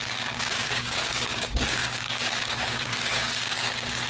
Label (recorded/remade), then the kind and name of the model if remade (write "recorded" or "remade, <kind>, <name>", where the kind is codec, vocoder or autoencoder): remade, codec, DAC